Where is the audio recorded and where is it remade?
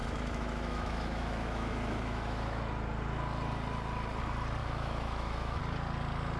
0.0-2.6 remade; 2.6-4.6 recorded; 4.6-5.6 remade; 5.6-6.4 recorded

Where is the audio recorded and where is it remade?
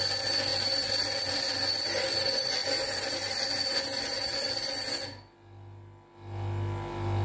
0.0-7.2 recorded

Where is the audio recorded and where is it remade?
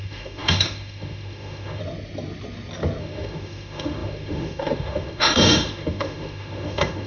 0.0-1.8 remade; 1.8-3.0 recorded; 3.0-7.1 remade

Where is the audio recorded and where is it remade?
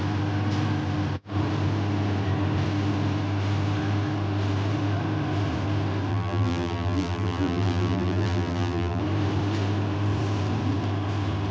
0.0-6.1 recorded; 6.1-9.0 remade; 9.0-11.5 recorded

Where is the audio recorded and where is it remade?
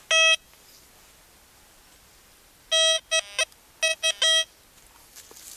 0.0-5.6 recorded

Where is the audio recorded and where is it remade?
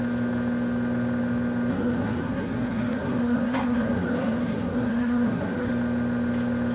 0.0-1.7 recorded; 1.7-5.7 remade; 5.7-6.7 recorded